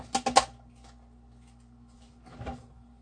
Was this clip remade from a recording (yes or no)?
no